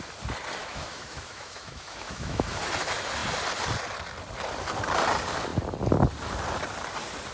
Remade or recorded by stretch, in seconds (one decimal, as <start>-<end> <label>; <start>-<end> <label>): 0.0-0.6 recorded; 0.6-2.6 remade; 2.6-7.3 recorded